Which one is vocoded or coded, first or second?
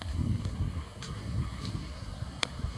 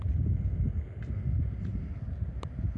first